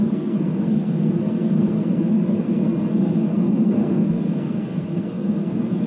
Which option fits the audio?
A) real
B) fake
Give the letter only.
B